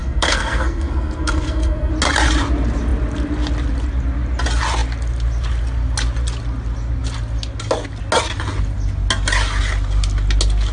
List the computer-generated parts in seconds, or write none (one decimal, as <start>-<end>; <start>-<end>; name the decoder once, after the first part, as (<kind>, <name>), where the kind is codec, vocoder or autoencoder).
0.0-1.9 (codec, SNAC)